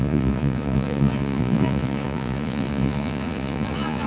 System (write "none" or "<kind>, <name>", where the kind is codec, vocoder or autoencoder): vocoder, Vocos